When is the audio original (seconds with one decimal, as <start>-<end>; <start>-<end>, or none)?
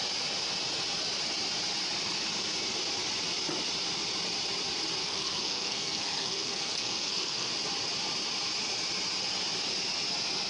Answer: 0.0-5.0; 7.5-10.5